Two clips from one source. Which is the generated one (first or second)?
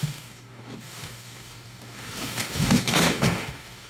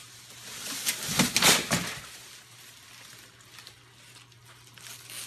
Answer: first